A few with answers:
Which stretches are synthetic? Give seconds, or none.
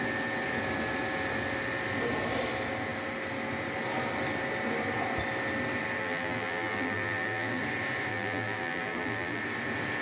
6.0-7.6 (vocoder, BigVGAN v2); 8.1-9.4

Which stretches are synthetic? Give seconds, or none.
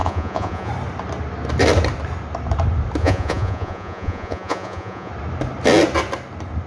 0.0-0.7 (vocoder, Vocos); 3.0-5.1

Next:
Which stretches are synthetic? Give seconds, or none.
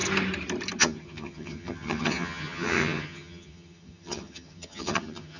0.8-5.4 (vocoder, HiFi-GAN)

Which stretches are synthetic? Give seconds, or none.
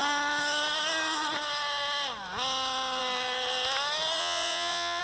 4.2-5.0 (vocoder, Vocos)